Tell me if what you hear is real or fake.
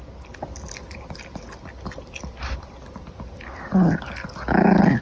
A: real